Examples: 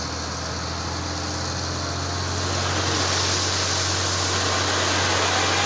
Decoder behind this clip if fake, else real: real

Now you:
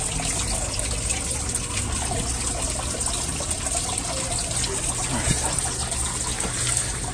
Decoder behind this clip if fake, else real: real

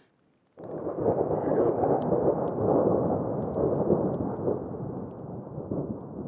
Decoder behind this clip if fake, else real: real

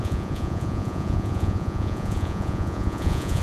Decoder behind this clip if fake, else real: fake, vocoder, Vocos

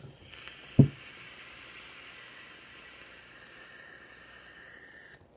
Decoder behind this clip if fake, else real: real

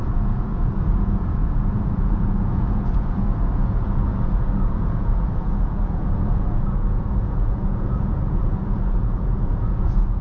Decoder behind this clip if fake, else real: fake, vocoder, Vocos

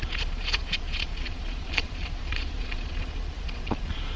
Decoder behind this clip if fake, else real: fake, vocoder, Vocos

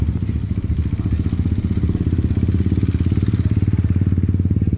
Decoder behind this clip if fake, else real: real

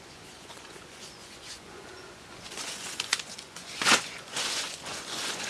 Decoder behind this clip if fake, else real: fake, vocoder, Vocos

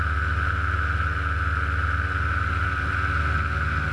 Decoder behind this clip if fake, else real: real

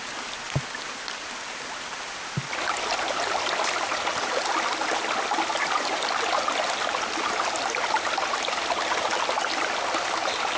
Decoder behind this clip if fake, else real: real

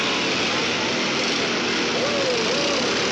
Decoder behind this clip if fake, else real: real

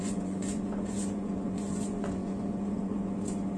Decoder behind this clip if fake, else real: fake, vocoder, Vocos